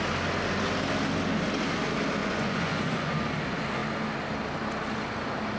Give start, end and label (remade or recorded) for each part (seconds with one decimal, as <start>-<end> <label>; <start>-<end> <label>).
0.0-2.2 recorded; 2.2-3.1 remade; 3.1-5.6 recorded